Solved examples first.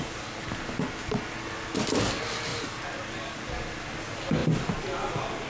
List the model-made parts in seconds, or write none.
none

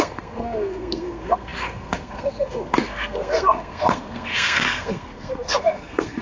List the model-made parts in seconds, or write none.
0.0-6.2 (codec, SNAC)

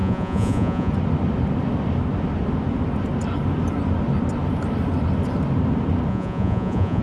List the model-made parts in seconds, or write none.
0.0-0.9 (vocoder, Vocos); 6.1-7.0

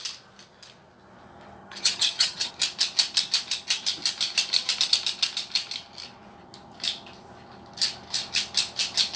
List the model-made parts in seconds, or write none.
1.6-2.5 (vocoder, HiFi-GAN)